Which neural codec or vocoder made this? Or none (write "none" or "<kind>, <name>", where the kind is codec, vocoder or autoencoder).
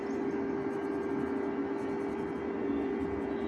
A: none